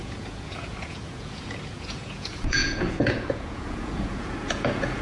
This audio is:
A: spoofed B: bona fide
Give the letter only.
A